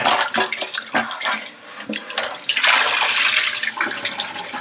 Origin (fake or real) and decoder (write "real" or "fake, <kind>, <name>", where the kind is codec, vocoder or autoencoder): real